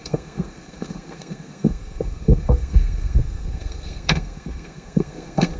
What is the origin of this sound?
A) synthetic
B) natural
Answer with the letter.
A